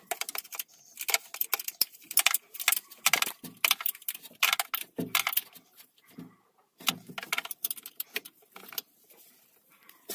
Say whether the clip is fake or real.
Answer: real